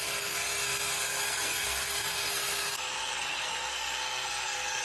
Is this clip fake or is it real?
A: fake